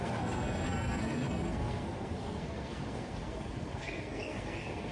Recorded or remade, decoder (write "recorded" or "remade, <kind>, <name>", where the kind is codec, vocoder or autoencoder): remade, codec, SNAC